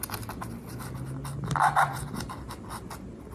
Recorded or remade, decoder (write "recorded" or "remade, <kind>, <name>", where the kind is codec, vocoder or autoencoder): recorded